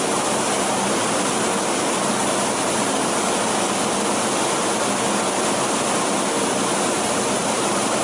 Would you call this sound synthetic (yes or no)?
no